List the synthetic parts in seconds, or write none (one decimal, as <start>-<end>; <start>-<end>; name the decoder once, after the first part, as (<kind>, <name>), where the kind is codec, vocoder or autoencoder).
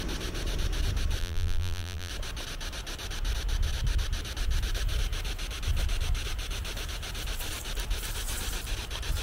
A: 1.2-2.1 (vocoder, BigVGAN v2)